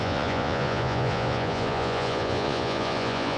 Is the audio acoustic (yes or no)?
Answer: no